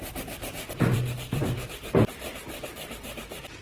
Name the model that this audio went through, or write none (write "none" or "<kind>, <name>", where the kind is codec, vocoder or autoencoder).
vocoder, BigVGAN v2